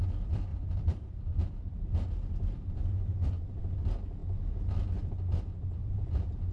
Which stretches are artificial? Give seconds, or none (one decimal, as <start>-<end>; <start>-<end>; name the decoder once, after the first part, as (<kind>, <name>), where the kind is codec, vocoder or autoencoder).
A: 0.5-1.1 (vocoder, BigVGAN v2); 2.8-3.6; 5.8-6.5